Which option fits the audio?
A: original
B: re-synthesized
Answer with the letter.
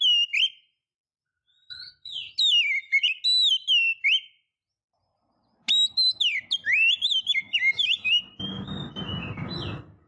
A